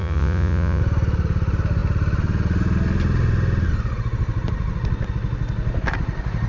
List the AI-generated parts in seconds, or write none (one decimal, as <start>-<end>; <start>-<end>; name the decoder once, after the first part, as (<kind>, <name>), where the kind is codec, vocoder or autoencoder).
0.0-0.8 (vocoder, Vocos)